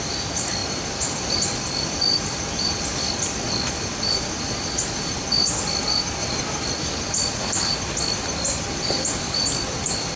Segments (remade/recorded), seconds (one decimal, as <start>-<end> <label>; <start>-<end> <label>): 0.0-10.2 recorded